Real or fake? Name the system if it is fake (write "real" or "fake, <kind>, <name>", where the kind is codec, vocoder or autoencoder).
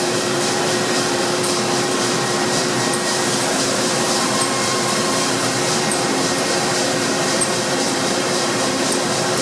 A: fake, vocoder, BigVGAN v2